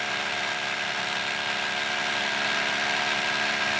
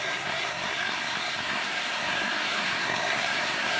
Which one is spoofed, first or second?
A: second